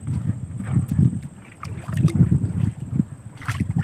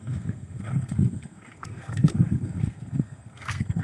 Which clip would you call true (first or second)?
first